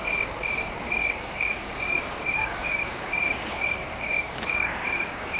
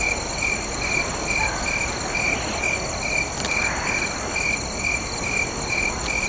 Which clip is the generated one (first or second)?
first